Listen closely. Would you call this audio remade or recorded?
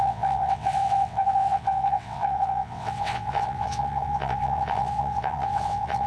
remade